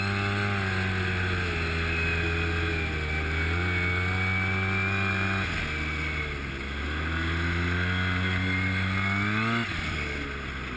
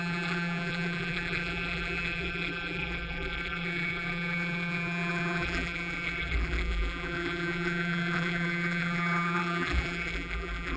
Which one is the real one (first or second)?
first